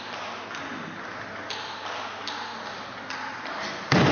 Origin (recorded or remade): recorded